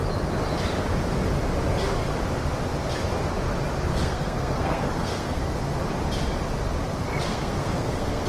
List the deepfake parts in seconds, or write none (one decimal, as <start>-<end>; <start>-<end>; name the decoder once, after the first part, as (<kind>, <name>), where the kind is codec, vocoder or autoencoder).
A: 3.9-5.4 (codec, SNAC); 7.3-8.3